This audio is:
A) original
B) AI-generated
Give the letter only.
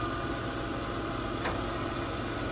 B